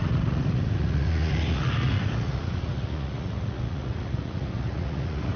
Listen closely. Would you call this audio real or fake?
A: fake